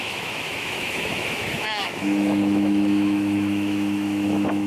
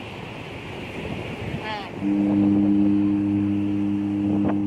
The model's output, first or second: first